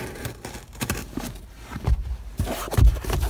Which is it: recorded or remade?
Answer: remade